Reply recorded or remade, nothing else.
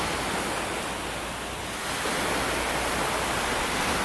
recorded